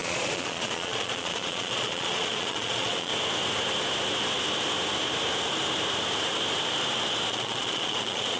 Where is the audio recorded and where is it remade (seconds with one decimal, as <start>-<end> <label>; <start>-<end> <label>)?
0.0-3.1 remade; 3.1-7.3 recorded; 7.3-8.4 remade